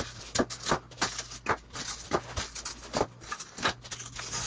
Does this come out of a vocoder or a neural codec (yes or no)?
no